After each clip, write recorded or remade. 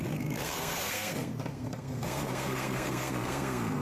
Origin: remade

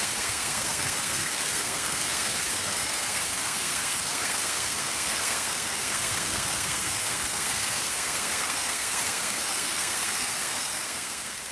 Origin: remade